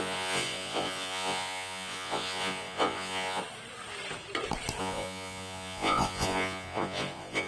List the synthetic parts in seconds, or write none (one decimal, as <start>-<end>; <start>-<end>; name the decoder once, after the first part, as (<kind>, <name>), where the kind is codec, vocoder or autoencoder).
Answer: 0.0-3.4 (vocoder, Vocos); 4.8-7.5

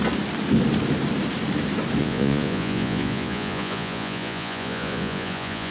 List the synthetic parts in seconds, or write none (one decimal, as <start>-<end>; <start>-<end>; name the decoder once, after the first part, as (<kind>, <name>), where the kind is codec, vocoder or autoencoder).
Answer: 2.0-5.7 (vocoder, Vocos)